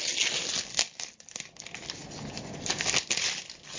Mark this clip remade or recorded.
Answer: recorded